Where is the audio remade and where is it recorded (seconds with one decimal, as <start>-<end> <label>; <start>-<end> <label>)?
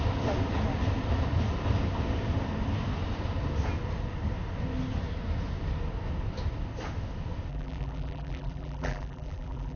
0.0-7.5 recorded; 7.5-9.8 remade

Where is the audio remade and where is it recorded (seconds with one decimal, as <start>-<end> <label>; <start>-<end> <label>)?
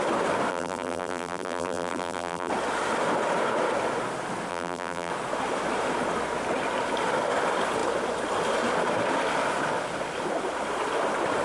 0.0-0.5 recorded; 0.5-2.5 remade; 2.5-4.5 recorded; 4.5-5.1 remade; 5.1-11.4 recorded